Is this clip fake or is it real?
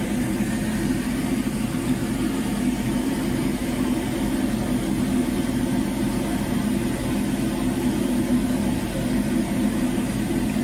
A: real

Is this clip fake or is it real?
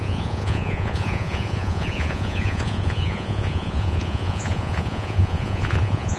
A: fake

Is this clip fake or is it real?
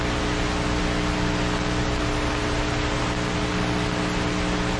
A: real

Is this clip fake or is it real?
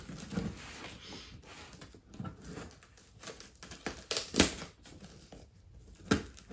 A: real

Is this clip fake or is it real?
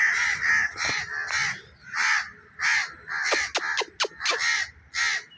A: real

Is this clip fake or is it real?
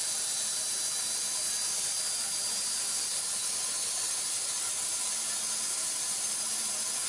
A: real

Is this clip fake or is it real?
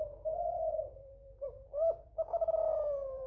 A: fake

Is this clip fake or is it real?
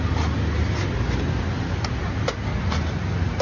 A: real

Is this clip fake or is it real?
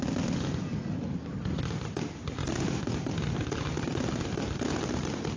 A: real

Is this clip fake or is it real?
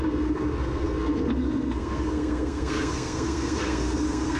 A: fake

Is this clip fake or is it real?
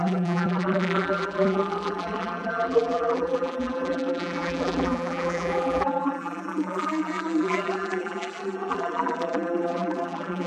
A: fake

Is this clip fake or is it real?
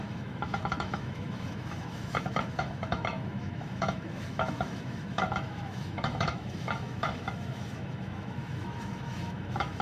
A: fake